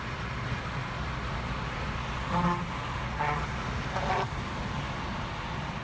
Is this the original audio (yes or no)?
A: yes